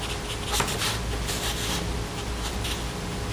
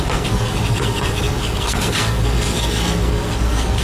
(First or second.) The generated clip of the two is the second